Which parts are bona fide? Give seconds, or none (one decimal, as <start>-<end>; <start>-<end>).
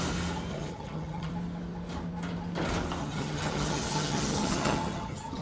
0.0-0.5; 1.3-3.0